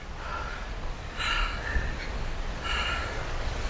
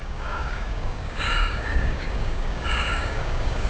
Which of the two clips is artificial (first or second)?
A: second